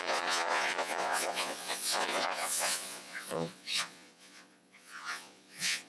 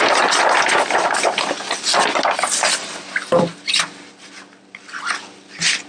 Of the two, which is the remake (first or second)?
first